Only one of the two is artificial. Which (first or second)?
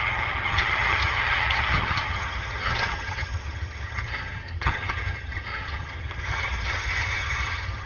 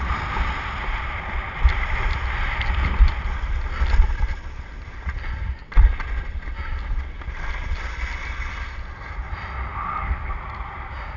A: first